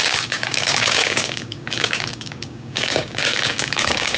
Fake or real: fake